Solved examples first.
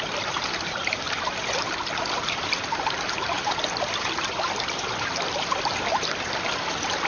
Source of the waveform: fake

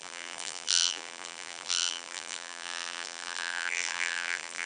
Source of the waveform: fake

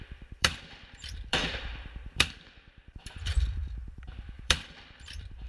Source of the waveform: fake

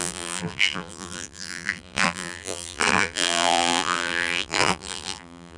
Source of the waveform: fake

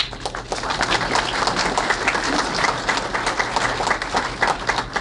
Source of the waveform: real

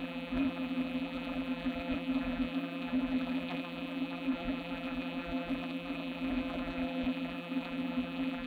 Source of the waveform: fake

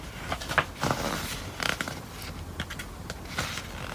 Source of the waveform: real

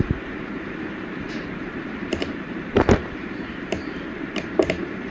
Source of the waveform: fake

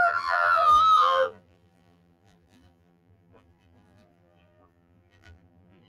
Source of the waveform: fake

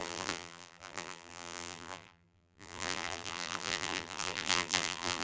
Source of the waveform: fake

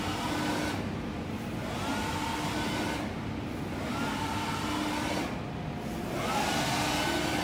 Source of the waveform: real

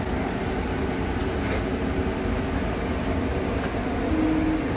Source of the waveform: real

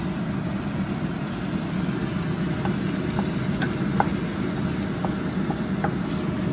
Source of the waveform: real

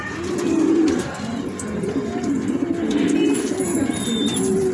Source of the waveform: real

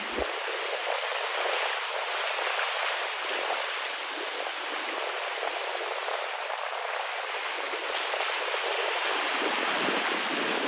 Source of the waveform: real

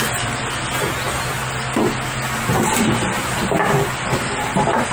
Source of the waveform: real